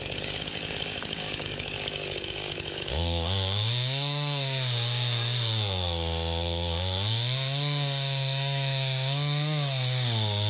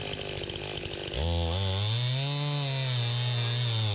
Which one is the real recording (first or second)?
second